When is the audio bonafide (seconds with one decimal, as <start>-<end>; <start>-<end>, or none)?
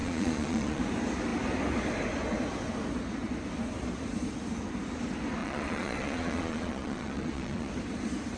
0.8-5.4; 7.7-8.4